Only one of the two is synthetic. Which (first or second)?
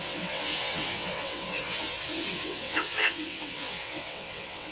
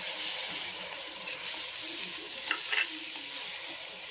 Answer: first